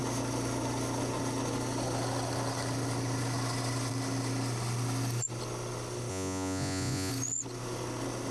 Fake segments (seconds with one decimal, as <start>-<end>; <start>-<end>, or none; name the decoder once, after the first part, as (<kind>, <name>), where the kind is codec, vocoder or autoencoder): 6.1-7.1 (vocoder, Vocos)

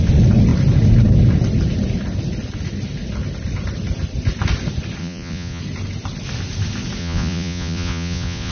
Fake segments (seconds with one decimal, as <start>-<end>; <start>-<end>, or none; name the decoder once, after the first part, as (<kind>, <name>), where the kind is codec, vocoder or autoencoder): 5.0-5.6 (vocoder, Vocos); 7.0-8.5

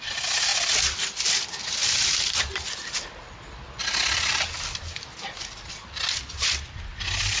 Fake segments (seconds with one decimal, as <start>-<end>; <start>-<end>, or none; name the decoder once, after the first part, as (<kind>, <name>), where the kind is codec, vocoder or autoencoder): none

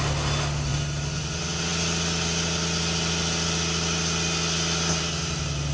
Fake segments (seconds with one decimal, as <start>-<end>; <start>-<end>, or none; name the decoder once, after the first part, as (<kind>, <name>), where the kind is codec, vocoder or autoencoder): none

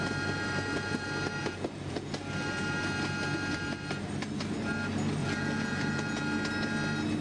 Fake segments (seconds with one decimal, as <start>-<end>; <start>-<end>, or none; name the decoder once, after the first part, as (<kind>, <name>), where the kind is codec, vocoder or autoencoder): 1.4-2.1 (vocoder, Vocos); 5.2-6.2

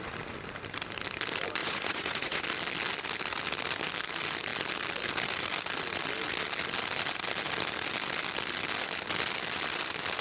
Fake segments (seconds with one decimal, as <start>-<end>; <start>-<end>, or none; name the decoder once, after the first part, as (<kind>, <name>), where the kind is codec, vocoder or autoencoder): 1.6-2.4 (vocoder, Vocos)

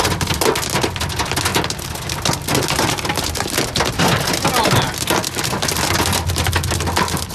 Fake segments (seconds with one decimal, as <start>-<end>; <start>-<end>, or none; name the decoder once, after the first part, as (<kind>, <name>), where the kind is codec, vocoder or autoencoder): none

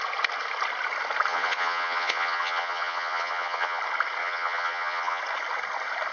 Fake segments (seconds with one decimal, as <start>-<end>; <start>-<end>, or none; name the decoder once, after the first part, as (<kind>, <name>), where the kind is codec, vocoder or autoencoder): 1.3-3.8 (vocoder, Vocos); 4.2-5.2